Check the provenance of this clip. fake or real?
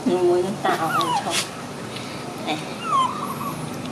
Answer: real